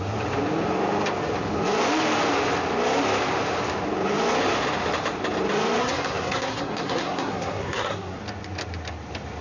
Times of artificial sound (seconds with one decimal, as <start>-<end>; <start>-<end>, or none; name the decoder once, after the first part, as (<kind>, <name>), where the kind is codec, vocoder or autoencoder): 5.8-8.2 (codec, SNAC)